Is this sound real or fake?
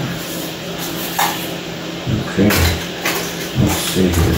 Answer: fake